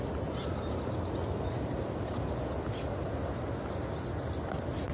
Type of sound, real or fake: real